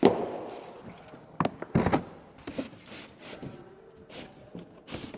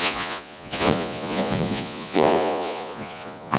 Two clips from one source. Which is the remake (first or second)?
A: second